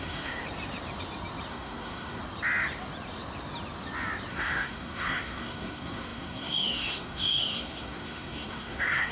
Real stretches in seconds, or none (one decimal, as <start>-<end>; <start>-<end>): 0.4-1.5; 2.2-4.3